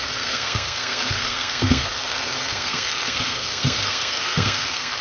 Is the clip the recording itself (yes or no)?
no